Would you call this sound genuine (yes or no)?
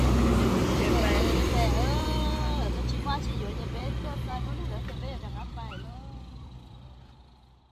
no